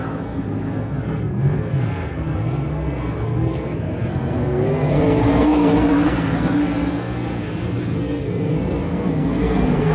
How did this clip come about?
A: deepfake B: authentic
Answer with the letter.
A